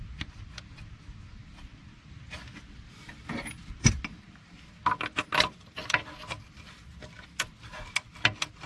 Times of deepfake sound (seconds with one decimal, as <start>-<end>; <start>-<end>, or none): none